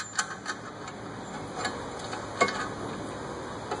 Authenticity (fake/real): real